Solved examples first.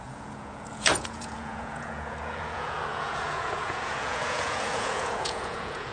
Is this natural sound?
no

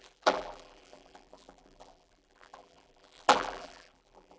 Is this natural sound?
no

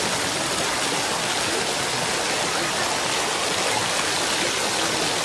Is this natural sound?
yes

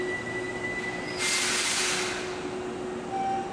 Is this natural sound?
yes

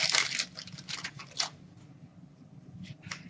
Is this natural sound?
yes